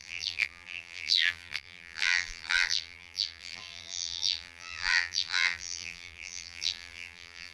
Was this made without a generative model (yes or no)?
no